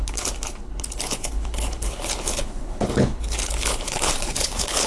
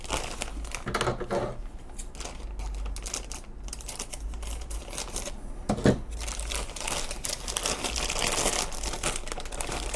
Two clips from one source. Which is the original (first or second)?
second